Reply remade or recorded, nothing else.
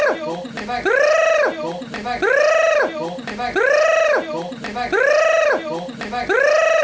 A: recorded